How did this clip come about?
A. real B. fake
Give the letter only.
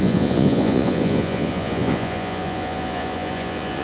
B